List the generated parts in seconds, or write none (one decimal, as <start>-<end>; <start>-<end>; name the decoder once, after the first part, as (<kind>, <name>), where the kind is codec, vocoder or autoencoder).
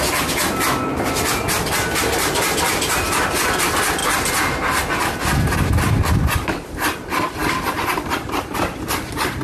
7.4-8.5 (vocoder, BigVGAN v2)